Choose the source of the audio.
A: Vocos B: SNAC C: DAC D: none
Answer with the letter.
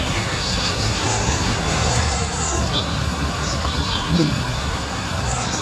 B